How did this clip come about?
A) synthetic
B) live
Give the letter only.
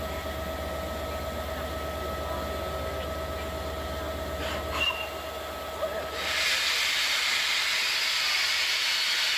B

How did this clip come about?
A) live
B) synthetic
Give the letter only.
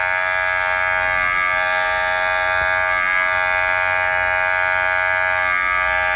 A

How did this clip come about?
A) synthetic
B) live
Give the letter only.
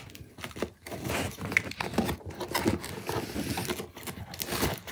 B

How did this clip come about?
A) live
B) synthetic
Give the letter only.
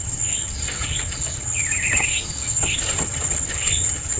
B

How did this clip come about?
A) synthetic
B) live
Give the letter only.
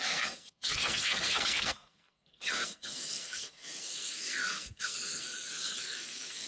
A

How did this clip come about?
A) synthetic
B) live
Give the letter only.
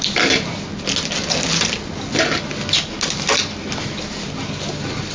B